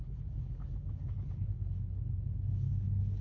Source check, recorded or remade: remade